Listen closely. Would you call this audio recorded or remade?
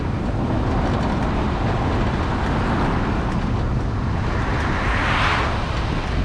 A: recorded